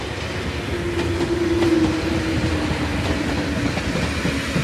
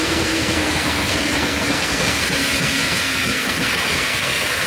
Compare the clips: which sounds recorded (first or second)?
first